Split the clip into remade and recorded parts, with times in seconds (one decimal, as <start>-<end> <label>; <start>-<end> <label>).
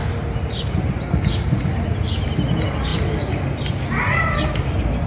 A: 0.0-5.1 recorded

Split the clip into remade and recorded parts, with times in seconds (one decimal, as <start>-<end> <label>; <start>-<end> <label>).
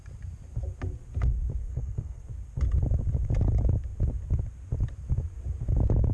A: 0.0-1.6 recorded; 1.6-2.2 remade; 2.2-6.1 recorded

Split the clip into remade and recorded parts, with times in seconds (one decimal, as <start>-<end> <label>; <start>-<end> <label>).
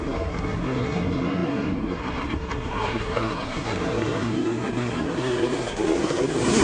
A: 0.0-6.6 remade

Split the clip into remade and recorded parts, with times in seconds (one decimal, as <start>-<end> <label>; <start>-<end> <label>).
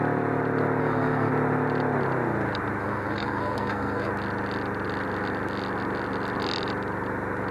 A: 0.0-0.8 recorded; 0.8-1.3 remade; 1.3-2.8 recorded; 2.8-4.1 remade; 4.1-7.5 recorded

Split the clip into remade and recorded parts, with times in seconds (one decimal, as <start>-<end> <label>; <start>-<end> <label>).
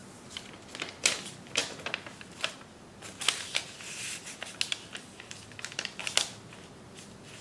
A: 0.0-7.4 recorded